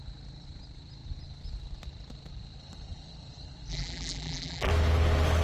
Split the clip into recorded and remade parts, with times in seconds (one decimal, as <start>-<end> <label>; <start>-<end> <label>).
0.0-3.7 recorded; 3.7-4.7 remade; 4.7-5.4 recorded